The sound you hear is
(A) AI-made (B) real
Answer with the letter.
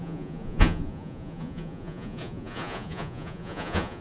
A